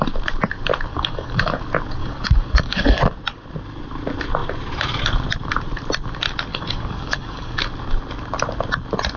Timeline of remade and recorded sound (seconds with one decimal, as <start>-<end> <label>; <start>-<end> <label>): 0.0-0.9 recorded; 0.9-1.6 remade; 1.6-2.0 recorded; 2.0-3.0 remade; 3.0-6.5 recorded; 6.5-7.6 remade; 7.6-9.2 recorded